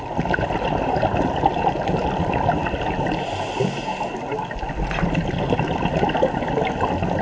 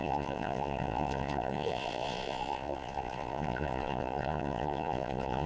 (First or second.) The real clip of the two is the first